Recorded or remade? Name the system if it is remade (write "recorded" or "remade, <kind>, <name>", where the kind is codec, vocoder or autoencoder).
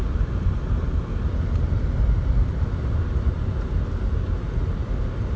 recorded